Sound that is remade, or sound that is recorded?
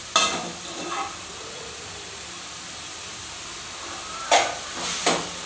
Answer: recorded